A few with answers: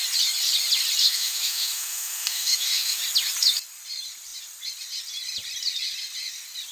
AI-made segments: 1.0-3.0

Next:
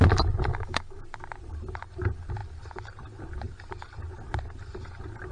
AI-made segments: 0.5-1.0

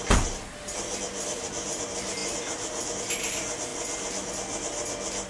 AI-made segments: none